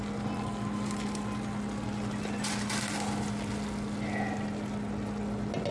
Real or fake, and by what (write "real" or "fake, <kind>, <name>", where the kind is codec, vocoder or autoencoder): real